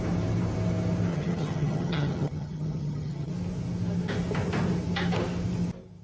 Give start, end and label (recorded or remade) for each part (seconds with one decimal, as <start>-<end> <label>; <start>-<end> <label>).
0.0-1.1 recorded; 1.1-3.3 remade; 3.3-6.0 recorded